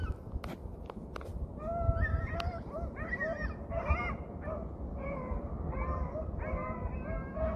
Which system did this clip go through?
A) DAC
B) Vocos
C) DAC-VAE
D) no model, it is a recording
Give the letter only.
D